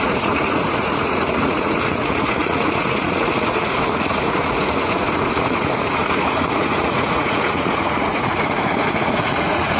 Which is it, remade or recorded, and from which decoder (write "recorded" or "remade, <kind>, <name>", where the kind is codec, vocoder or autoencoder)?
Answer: remade, vocoder, Vocos